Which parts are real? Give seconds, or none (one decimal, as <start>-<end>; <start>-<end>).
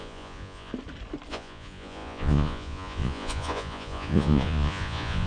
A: 0.7-1.3